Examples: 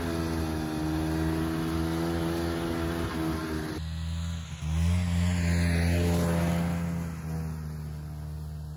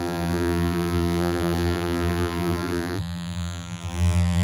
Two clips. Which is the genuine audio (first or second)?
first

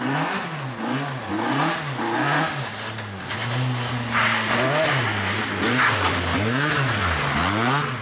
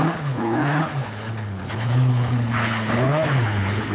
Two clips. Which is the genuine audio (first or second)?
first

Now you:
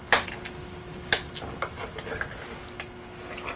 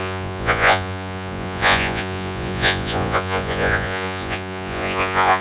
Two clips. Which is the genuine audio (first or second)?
first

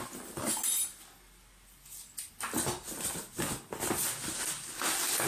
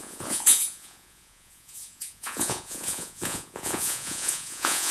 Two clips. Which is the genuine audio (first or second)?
first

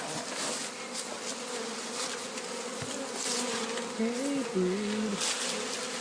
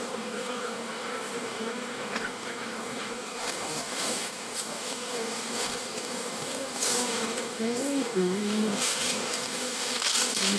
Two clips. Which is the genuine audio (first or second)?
first